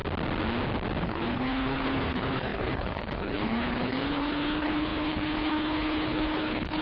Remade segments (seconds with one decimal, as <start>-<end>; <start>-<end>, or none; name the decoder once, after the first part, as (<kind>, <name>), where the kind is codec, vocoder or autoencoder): 1.0-6.8 (codec, HILCodec)